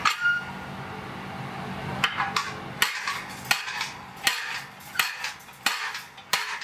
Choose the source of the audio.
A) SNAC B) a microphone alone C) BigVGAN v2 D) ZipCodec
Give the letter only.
B